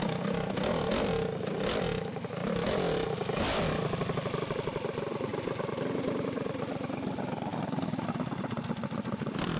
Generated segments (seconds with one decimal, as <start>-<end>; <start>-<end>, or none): 0.0-5.3; 6.1-7.5; 8.7-9.6